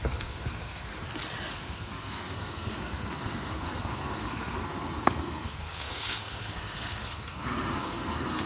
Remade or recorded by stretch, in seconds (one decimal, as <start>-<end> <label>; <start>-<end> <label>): 0.0-0.9 remade; 0.9-1.5 recorded; 1.5-8.5 remade